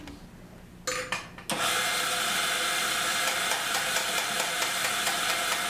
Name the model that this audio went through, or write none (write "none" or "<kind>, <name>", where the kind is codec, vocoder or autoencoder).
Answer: none